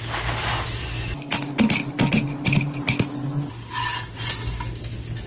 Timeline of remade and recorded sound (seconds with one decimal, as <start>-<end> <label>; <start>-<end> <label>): 0.0-5.3 recorded